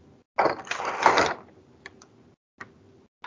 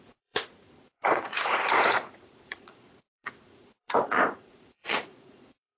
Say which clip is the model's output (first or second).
second